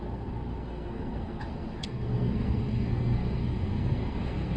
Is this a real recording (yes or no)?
no